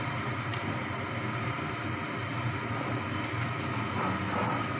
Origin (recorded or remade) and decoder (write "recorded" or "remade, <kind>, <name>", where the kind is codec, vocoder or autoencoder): recorded